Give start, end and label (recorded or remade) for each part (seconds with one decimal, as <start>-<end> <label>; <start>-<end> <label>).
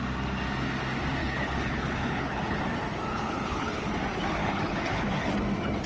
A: 0.0-1.2 recorded; 1.2-2.6 remade; 2.6-3.1 recorded; 3.1-3.9 remade; 3.9-4.4 recorded; 4.4-5.3 remade; 5.3-5.9 recorded